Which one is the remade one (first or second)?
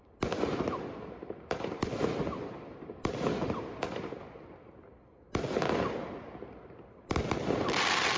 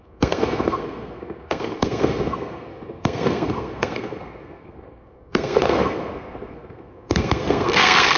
second